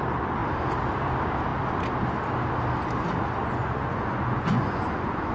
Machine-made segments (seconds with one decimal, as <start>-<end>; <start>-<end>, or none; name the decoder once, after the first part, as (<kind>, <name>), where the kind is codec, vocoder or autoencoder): 3.4-5.3 (vocoder, Vocos)